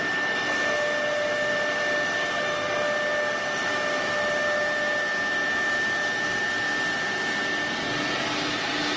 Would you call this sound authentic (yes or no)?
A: yes